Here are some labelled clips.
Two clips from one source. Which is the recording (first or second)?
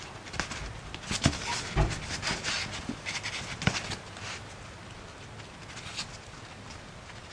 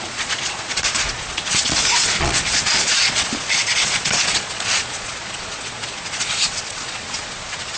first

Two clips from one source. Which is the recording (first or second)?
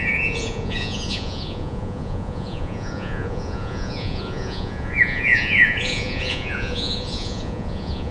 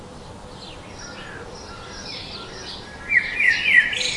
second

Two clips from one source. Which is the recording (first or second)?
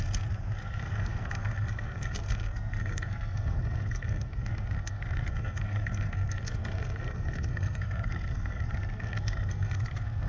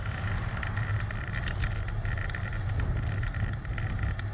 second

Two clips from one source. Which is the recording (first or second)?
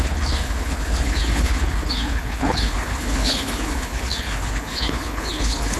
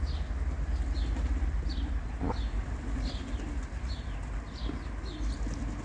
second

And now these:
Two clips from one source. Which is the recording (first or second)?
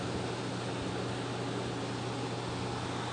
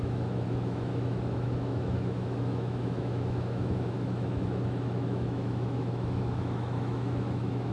first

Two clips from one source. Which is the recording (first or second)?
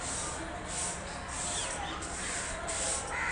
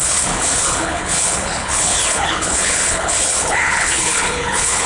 first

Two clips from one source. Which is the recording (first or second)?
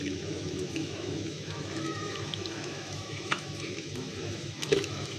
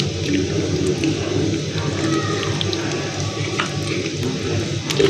second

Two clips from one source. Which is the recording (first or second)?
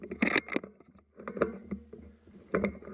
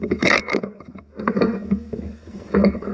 first